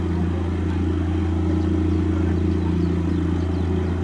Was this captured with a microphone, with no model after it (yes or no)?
yes